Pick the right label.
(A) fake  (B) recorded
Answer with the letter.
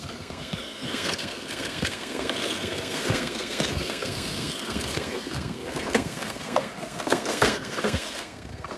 A